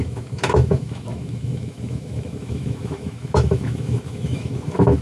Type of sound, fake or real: fake